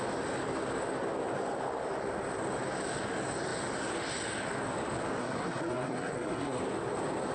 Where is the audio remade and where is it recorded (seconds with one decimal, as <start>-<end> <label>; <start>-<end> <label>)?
0.0-5.2 recorded; 5.2-6.6 remade; 6.6-7.3 recorded